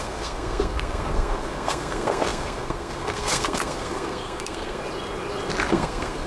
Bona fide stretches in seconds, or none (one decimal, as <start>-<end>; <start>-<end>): 4.8-5.7